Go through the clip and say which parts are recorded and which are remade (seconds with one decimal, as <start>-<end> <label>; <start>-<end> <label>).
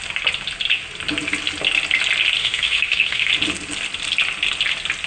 0.0-2.4 recorded; 2.4-3.3 remade; 3.3-5.1 recorded